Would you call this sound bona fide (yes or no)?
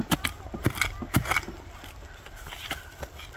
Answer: yes